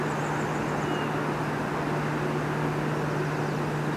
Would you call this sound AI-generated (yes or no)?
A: no